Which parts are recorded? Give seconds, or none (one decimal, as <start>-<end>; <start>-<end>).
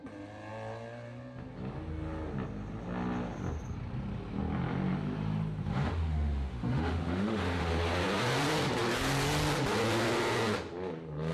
0.0-5.7; 7.7-11.3